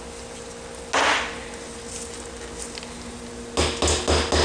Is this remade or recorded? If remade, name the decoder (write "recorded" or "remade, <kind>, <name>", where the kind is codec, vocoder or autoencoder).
recorded